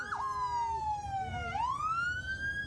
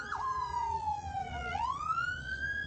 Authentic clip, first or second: first